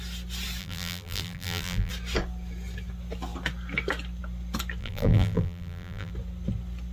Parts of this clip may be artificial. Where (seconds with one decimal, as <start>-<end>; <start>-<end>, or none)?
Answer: 0.6-1.9; 4.8-6.1